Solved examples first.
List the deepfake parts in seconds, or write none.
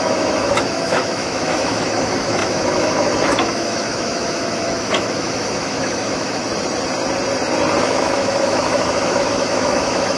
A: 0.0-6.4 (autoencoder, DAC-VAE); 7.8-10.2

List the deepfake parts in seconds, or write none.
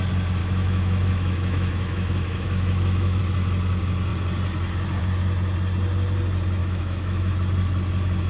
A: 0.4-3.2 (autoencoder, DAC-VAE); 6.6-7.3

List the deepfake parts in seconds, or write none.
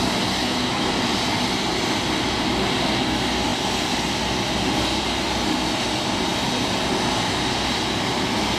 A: 0.4-0.9 (autoencoder, DAC-VAE)